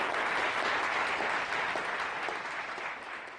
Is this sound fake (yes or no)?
no